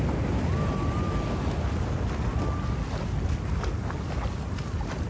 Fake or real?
real